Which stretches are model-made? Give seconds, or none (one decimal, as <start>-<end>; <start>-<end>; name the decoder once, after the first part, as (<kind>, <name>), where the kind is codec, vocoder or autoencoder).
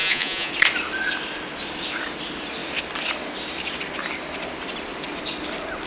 0.0-0.5 (vocoder, Vocos)